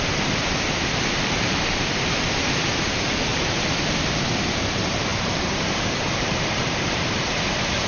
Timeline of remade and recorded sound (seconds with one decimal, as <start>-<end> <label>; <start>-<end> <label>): 0.0-3.3 remade; 3.3-4.0 recorded; 4.0-7.9 remade